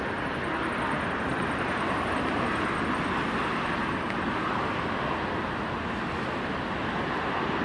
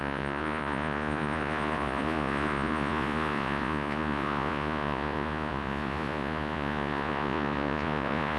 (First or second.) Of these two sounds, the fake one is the second